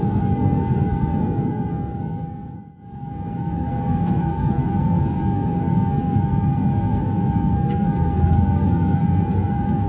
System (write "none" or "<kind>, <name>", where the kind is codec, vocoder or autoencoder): codec, SNAC